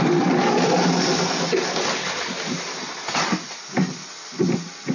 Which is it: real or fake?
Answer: real